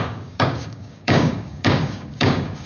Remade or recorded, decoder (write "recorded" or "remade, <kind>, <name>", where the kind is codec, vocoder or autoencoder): remade, codec, DAC